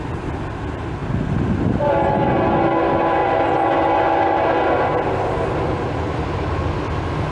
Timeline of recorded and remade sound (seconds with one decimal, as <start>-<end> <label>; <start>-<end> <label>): 0.0-7.3 recorded